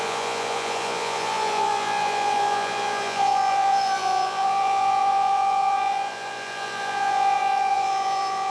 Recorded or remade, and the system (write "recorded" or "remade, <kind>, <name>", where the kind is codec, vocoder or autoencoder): remade, vocoder, Vocos